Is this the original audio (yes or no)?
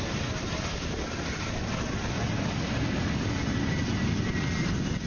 yes